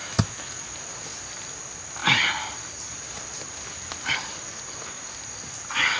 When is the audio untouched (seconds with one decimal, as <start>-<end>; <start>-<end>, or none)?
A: 0.5-6.0